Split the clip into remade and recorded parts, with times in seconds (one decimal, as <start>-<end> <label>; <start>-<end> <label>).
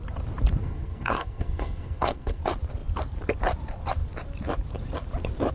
0.0-0.6 recorded; 0.6-2.4 remade; 2.4-5.5 recorded